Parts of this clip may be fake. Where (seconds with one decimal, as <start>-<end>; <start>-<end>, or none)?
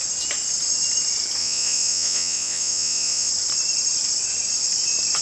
1.4-3.3